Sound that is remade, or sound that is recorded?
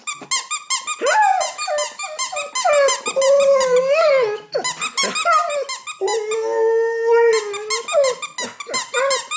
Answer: recorded